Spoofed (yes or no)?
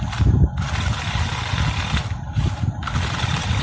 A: no